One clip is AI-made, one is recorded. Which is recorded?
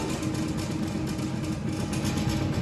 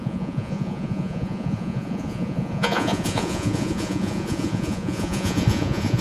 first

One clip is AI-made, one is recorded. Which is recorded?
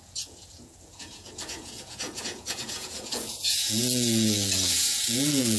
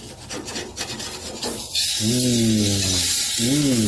second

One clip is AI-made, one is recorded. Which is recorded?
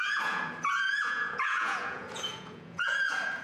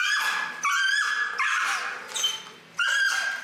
second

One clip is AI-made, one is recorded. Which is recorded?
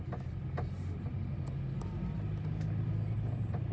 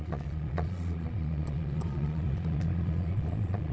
first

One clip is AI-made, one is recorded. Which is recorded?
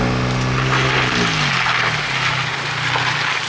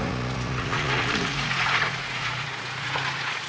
first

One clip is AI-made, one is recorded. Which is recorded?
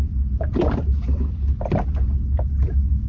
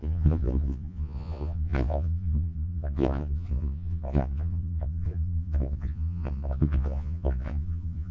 first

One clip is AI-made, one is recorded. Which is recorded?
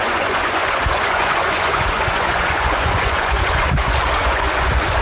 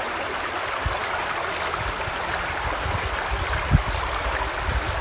second